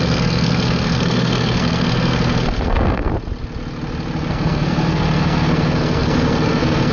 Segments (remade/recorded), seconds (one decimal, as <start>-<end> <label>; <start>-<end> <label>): 0.0-3.1 remade; 3.1-4.3 recorded; 4.3-6.9 remade